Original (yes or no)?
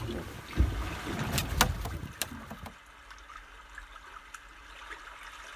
yes